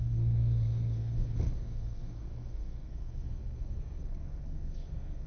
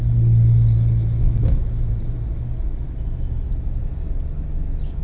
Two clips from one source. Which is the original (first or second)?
second